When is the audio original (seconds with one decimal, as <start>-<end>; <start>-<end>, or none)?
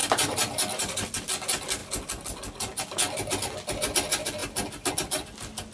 0.0-5.7